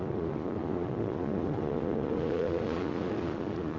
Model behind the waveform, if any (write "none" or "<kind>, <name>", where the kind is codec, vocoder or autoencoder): vocoder, Vocos